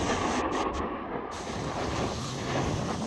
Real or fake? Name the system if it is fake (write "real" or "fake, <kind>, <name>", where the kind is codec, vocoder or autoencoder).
real